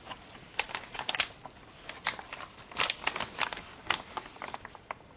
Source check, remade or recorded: recorded